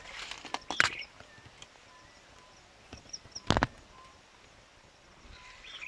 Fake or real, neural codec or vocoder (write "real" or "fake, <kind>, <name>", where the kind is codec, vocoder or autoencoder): real